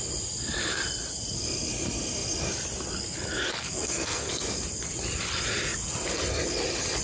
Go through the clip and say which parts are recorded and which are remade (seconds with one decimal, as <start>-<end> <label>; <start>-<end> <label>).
0.0-3.6 recorded; 3.6-4.3 remade; 4.3-7.0 recorded